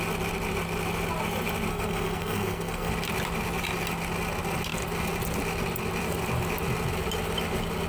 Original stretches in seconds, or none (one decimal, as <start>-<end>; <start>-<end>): 0.0-1.7; 2.9-7.9